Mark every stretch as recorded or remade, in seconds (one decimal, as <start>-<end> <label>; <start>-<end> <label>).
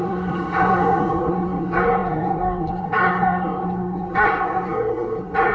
0.0-5.5 remade